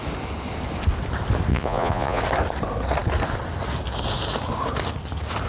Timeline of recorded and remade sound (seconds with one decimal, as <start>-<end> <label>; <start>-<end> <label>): 0.0-1.5 recorded; 1.5-2.2 remade; 2.2-5.5 recorded